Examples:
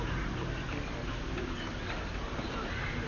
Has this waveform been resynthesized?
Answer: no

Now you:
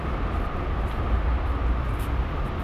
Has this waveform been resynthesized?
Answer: no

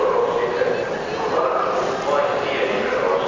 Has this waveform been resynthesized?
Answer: no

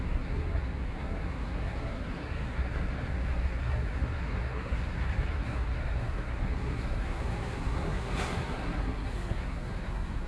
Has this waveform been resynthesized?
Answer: yes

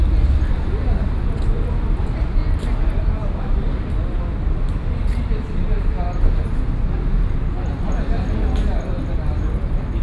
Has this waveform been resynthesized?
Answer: no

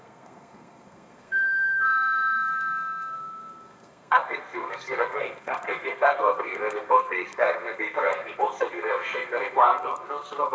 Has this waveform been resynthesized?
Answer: yes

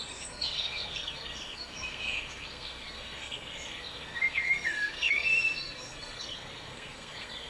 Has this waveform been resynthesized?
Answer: yes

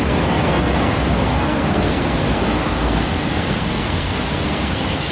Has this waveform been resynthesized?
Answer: yes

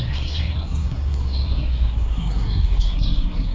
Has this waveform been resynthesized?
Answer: yes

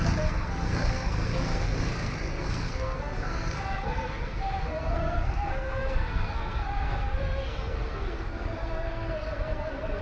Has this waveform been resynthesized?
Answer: yes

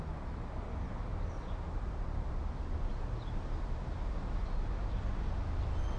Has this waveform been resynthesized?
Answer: no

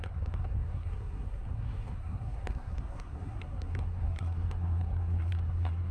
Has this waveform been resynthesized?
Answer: yes